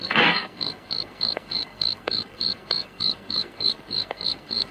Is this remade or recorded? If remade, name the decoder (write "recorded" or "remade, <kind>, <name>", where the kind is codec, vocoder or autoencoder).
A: remade, codec, SNAC